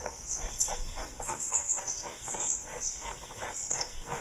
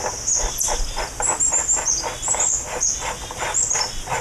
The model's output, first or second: first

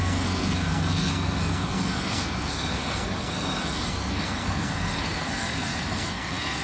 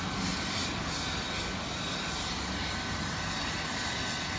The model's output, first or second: first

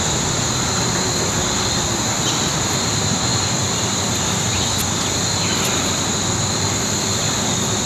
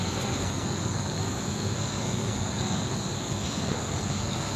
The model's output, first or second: second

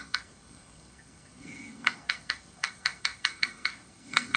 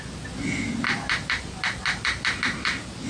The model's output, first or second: first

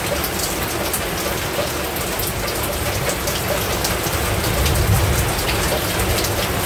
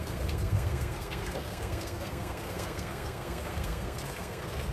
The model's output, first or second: second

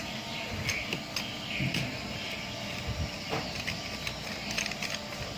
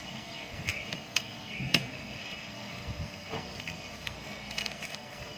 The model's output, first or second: second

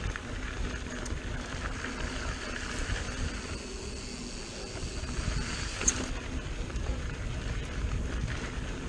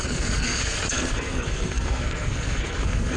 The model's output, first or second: second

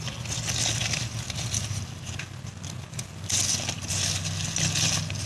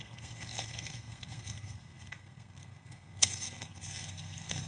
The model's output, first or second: second